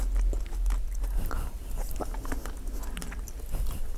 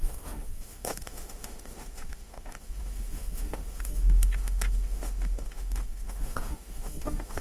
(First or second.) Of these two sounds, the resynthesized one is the second